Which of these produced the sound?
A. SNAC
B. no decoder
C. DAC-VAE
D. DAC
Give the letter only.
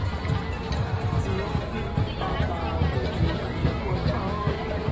B